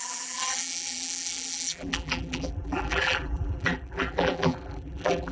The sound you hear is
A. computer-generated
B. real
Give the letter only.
A